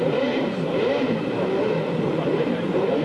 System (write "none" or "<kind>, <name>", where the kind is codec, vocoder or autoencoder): vocoder, BigVGAN v2